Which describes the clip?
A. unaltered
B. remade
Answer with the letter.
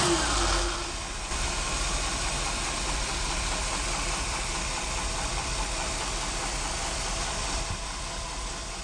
A